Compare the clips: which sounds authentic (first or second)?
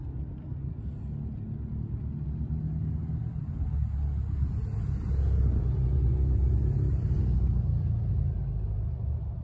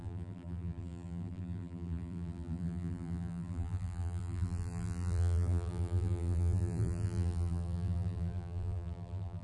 first